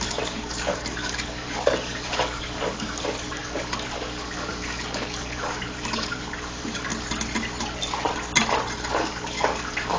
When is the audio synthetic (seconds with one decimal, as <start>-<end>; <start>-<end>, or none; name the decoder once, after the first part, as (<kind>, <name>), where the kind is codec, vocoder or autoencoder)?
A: 0.0-6.9 (codec, DAC); 8.9-10.0